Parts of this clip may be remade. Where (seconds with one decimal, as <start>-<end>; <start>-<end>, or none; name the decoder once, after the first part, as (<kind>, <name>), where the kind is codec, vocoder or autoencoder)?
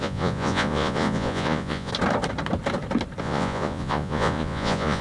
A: 0.0-1.9 (vocoder, Vocos); 3.2-5.0